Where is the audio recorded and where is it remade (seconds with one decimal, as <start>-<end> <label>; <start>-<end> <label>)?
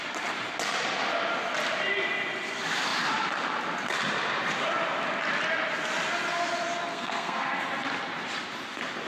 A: 0.0-6.9 recorded; 6.9-7.7 remade; 7.7-9.1 recorded